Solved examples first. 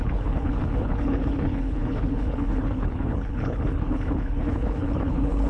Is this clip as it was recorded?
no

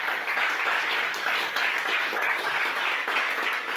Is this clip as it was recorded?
no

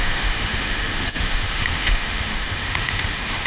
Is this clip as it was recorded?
no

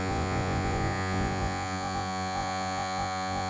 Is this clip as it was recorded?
no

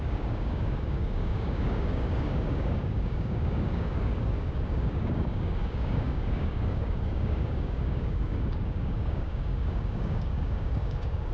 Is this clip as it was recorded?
no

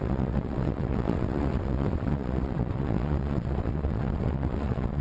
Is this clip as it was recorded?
no